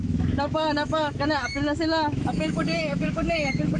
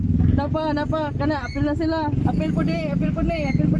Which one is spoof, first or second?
first